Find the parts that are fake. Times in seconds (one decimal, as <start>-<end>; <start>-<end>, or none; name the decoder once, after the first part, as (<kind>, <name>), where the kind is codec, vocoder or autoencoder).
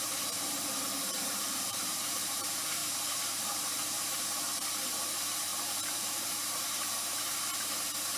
0.0-8.2 (vocoder, BigVGAN v2)